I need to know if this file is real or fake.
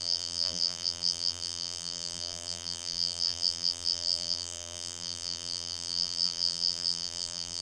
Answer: fake